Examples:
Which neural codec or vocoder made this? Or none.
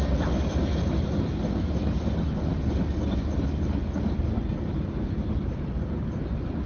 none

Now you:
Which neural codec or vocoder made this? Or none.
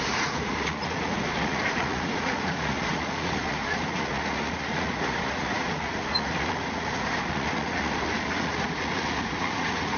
vocoder, Vocos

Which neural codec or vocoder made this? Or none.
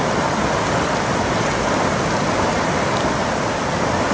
none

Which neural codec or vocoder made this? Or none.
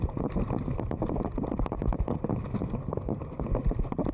none